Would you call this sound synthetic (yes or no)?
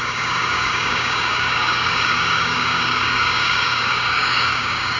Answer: yes